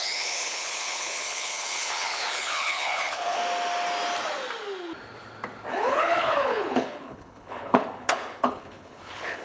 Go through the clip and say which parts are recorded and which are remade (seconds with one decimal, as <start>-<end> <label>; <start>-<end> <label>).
0.0-3.4 remade; 3.4-5.7 recorded; 5.7-9.4 remade